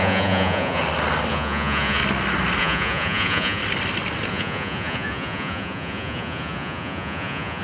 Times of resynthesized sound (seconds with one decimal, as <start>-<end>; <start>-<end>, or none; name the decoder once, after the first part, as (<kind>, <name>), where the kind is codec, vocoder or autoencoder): 0.0-0.8 (vocoder, Vocos); 1.3-2.0; 2.6-3.6; 4.3-7.6